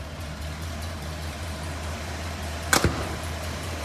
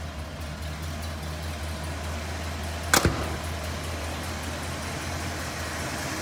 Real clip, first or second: second